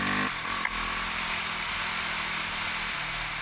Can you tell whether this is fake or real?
real